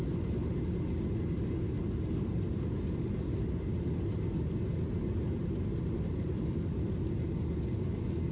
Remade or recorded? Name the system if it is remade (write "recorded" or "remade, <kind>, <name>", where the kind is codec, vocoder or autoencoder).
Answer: recorded